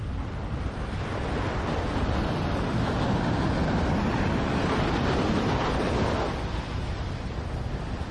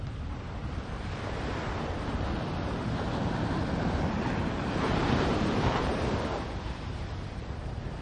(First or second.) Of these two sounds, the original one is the first